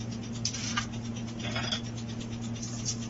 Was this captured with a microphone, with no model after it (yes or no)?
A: yes